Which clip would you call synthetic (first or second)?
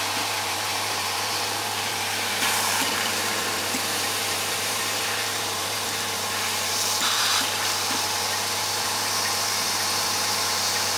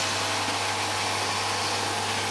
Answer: first